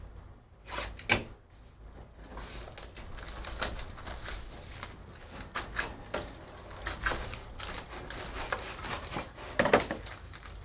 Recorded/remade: recorded